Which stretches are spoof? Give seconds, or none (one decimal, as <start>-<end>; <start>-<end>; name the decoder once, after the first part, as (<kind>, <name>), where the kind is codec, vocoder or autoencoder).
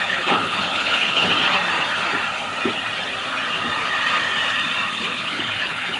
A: 0.0-1.3 (codec, HILCodec); 4.9-6.0